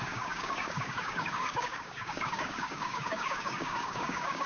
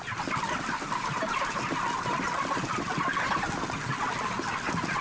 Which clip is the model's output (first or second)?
first